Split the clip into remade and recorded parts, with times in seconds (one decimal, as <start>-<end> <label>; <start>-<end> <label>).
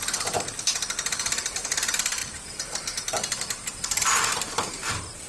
0.0-5.3 remade